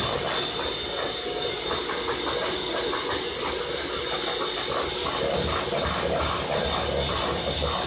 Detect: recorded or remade recorded